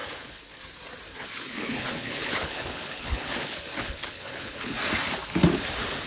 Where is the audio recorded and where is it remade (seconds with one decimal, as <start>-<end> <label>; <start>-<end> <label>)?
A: 0.0-0.6 remade; 0.6-1.1 recorded; 1.1-4.8 remade; 4.8-6.1 recorded